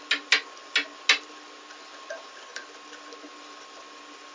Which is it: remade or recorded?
recorded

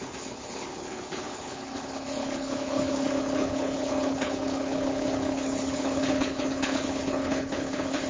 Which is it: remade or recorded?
remade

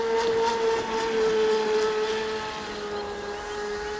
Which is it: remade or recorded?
recorded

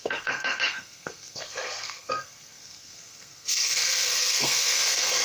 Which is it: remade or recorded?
remade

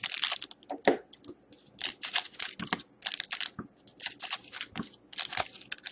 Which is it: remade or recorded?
recorded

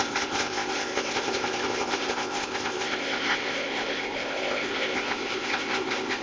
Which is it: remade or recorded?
remade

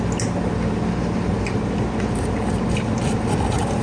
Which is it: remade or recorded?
recorded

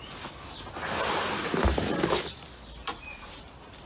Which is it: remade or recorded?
recorded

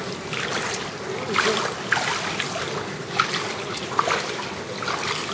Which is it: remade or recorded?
recorded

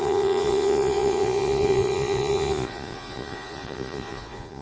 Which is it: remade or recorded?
remade